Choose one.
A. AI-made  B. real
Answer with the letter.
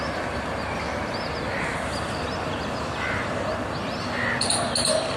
B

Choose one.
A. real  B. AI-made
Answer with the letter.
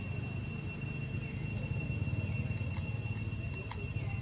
A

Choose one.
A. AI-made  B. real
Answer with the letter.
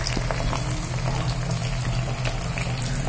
B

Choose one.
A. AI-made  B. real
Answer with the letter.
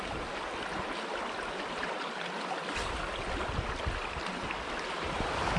B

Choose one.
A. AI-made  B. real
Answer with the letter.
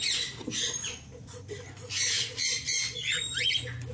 B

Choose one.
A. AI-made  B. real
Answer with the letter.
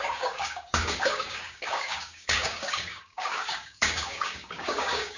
A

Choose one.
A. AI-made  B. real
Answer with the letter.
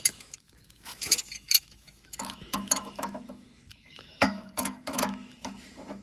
A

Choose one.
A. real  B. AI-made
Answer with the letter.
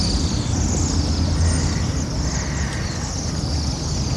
A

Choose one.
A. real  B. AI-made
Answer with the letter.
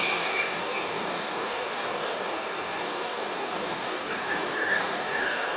B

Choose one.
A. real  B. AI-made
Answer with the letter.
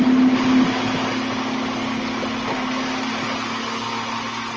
A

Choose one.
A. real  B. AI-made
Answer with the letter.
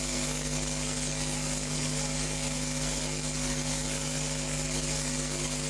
B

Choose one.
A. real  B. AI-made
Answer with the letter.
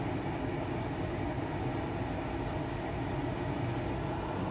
A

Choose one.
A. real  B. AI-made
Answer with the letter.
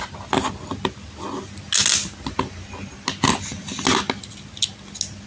A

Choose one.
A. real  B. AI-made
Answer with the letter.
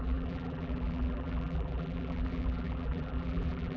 B